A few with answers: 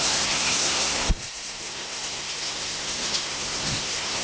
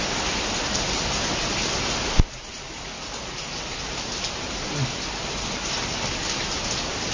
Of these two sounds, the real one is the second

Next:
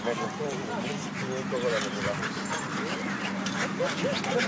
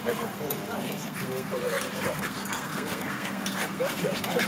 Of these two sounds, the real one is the first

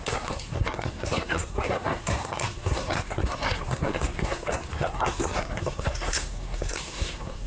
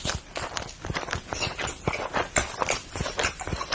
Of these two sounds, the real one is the second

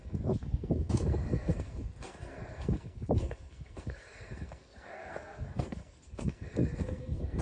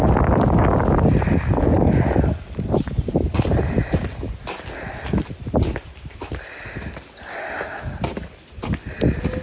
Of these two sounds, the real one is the second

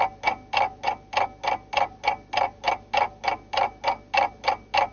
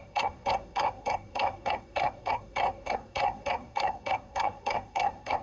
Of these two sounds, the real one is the first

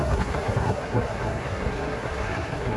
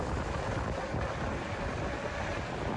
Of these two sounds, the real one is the second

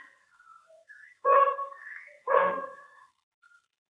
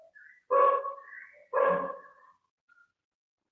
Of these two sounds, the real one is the second